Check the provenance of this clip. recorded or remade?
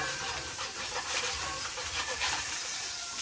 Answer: remade